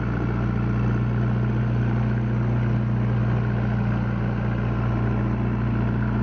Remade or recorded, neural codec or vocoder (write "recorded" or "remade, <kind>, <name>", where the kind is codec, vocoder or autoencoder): recorded